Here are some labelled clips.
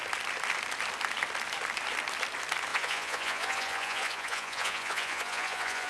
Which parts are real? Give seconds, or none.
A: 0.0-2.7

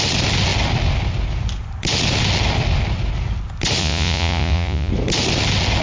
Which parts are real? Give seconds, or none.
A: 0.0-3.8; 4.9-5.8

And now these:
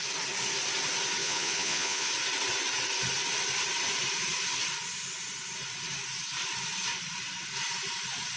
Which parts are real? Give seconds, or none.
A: 0.0-1.2; 2.1-8.4

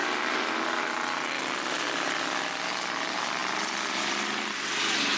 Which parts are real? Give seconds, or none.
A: 0.0-5.2

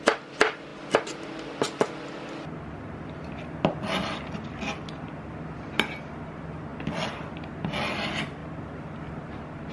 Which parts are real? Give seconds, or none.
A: 0.0-9.7

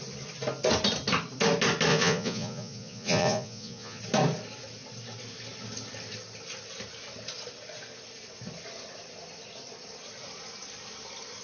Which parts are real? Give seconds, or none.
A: 0.0-1.9; 4.0-11.4

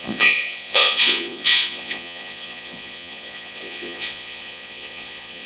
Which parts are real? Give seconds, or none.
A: none